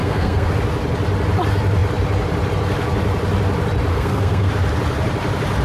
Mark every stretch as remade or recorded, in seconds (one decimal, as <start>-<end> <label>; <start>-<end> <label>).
0.0-0.5 remade; 0.5-3.9 recorded; 3.9-4.5 remade; 4.5-5.6 recorded